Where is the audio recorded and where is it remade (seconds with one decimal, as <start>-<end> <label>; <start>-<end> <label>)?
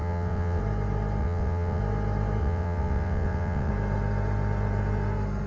0.0-0.6 remade; 0.6-1.2 recorded; 1.2-1.8 remade; 1.8-2.4 recorded; 2.4-3.7 remade; 3.7-5.5 recorded